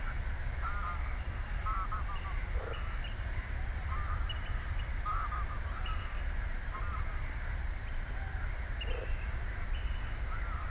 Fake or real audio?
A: real